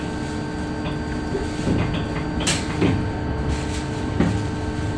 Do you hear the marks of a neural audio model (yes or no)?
no